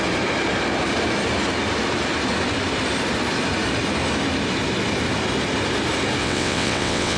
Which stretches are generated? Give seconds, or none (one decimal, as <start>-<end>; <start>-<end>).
6.2-7.2